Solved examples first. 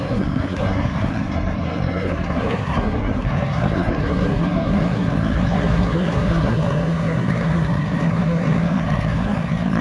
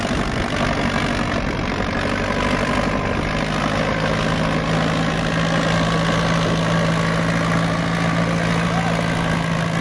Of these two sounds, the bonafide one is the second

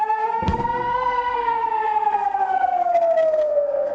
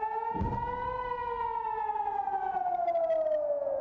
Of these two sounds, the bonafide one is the second